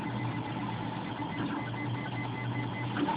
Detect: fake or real real